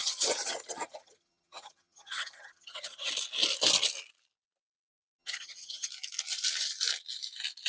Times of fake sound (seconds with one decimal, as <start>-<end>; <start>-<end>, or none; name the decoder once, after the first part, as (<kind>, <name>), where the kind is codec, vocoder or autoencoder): 0.0-3.1 (vocoder, HiFi-GAN); 5.2-5.9